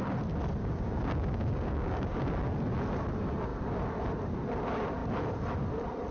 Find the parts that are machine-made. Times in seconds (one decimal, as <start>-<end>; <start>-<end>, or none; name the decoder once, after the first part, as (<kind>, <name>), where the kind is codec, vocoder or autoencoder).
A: 0.6-2.2 (codec, DAC)